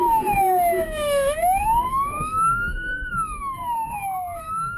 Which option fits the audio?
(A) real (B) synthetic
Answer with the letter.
B